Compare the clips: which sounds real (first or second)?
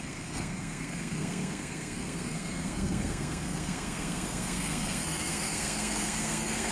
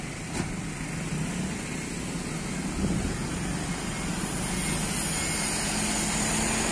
second